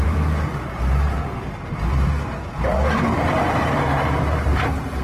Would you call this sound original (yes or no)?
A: no